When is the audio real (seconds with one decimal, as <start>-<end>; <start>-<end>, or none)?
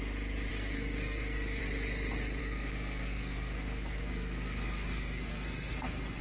0.0-0.5; 1.6-2.4